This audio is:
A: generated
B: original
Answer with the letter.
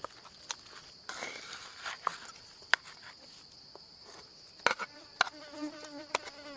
B